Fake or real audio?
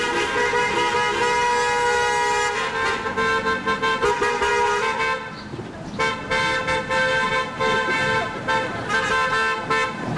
real